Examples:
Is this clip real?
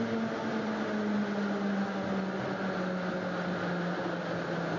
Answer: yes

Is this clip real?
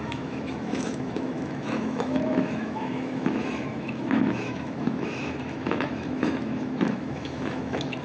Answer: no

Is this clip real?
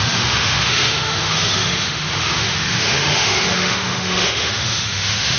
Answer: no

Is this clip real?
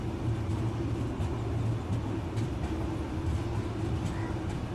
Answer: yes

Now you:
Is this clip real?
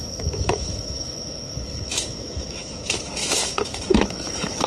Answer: no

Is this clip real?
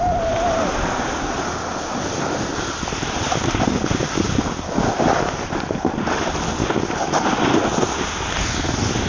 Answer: yes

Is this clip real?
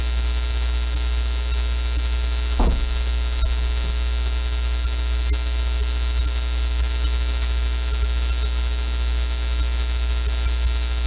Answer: yes